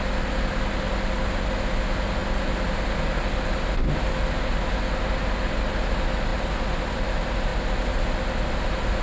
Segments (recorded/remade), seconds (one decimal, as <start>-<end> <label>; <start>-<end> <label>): 0.0-9.0 recorded